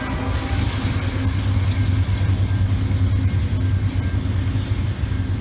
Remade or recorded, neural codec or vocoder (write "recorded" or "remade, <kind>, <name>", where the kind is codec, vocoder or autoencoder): recorded